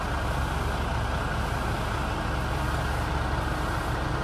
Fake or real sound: real